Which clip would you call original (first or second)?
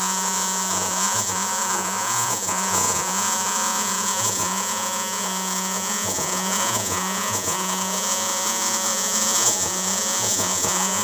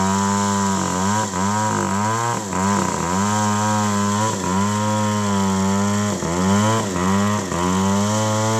second